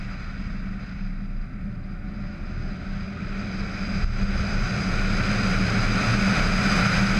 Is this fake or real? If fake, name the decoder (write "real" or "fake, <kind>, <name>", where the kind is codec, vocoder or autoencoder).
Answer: real